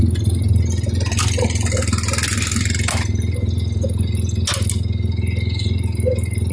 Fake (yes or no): no